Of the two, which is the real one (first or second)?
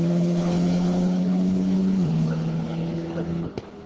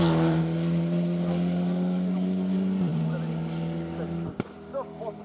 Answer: second